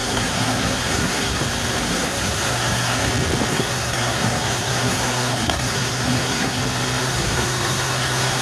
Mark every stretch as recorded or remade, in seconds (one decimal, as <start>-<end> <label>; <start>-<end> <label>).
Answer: 0.0-1.4 remade; 1.4-1.8 recorded; 1.8-3.1 remade; 3.1-3.5 recorded; 3.5-6.6 remade; 6.6-7.0 recorded; 7.0-8.4 remade